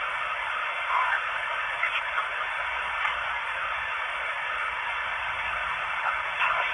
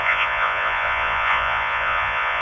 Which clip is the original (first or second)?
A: first